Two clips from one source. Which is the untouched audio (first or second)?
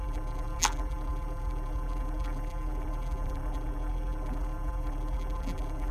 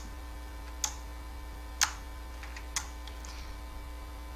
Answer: second